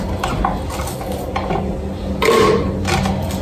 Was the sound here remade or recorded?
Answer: recorded